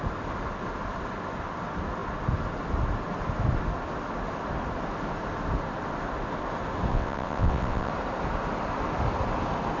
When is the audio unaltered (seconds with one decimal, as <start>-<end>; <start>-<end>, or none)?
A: 0.0-6.9; 7.9-9.8